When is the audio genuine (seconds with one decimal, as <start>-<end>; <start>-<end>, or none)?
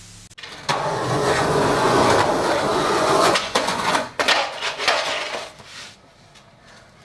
0.0-0.7; 2.1-2.7; 5.3-7.0